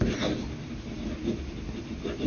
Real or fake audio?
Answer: real